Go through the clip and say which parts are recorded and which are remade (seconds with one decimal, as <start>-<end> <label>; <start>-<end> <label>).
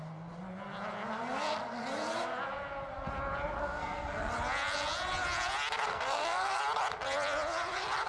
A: 0.0-3.6 recorded; 3.6-4.3 remade; 4.3-5.9 recorded; 5.9-6.6 remade; 6.6-8.1 recorded